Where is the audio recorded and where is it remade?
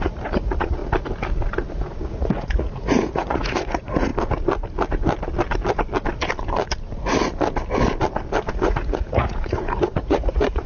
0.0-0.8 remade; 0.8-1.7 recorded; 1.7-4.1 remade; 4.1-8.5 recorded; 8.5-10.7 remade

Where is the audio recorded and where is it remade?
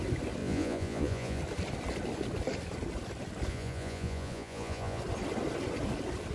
0.0-0.4 recorded; 0.4-1.4 remade; 1.4-3.5 recorded; 3.5-5.0 remade; 5.0-6.3 recorded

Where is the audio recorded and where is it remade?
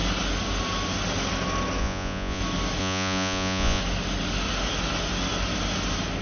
0.0-1.8 recorded; 1.8-2.4 remade; 2.4-2.8 recorded; 2.8-3.8 remade; 3.8-6.2 recorded